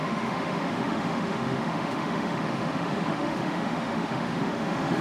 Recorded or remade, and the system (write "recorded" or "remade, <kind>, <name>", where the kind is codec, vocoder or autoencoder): remade, autoencoder, DAC-VAE